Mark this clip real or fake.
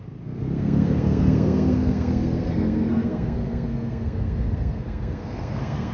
fake